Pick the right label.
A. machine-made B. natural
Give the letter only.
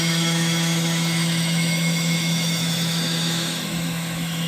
A